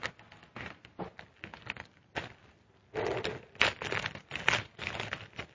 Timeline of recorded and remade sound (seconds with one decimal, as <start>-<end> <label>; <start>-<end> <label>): 0.0-5.5 recorded